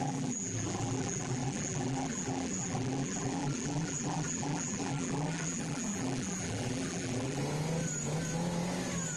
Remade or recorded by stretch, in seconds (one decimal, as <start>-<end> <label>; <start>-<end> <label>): 0.0-7.4 remade; 7.4-9.2 recorded